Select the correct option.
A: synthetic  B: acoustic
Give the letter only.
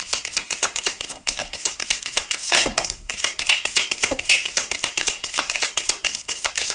A